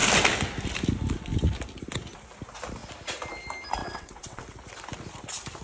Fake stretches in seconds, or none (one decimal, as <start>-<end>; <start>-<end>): 3.8-4.4